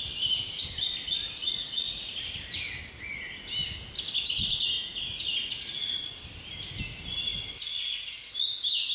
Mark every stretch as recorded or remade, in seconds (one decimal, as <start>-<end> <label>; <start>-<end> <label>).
0.0-1.4 recorded; 1.4-2.1 remade; 2.1-4.4 recorded; 4.4-5.9 remade; 5.9-8.9 recorded